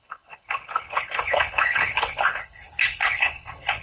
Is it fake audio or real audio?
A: fake